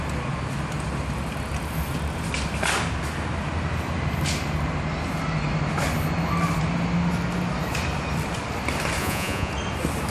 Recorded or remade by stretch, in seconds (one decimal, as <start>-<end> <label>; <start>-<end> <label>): 0.0-9.0 recorded; 9.0-9.5 remade; 9.5-10.1 recorded